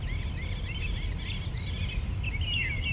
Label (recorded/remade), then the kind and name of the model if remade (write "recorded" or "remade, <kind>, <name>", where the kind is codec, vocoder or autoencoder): recorded